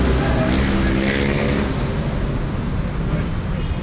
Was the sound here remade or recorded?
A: recorded